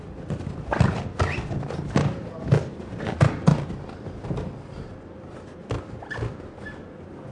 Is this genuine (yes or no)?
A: yes